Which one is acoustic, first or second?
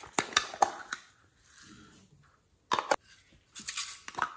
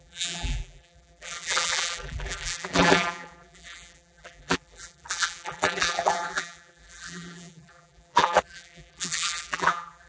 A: first